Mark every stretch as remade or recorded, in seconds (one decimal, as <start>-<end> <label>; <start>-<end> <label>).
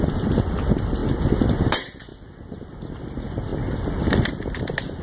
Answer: 0.0-5.0 recorded